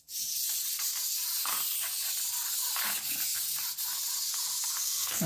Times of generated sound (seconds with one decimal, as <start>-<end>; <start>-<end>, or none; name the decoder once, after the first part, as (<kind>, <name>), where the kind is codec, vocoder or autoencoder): 4.8-5.3 (codec, SNAC)